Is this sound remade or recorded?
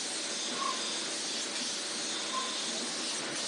recorded